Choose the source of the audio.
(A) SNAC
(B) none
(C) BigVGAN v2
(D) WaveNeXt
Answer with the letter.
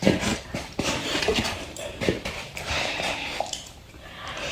C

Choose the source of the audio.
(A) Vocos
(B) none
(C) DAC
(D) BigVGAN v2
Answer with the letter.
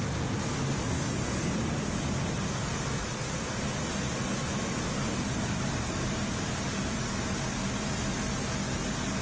B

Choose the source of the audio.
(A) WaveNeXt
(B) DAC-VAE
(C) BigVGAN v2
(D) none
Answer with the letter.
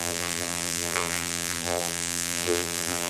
C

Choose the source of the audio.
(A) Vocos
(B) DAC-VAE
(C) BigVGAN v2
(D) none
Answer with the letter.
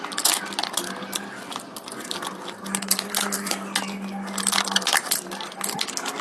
D